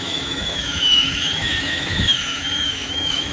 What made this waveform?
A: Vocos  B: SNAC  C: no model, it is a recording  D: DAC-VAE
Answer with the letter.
D